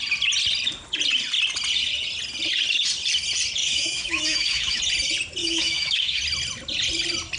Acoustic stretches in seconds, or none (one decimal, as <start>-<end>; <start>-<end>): 0.0-3.6; 4.8-5.4; 6.2-7.4